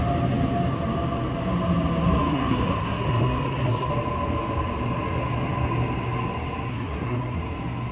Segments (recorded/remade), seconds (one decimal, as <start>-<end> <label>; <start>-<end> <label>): 0.0-2.2 recorded; 2.2-3.9 remade; 3.9-6.7 recorded; 6.7-7.4 remade; 7.4-7.9 recorded